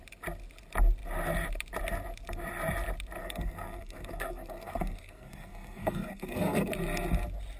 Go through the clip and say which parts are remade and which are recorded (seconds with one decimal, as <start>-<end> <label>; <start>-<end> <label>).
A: 0.0-3.2 recorded; 3.2-6.7 remade; 6.7-7.6 recorded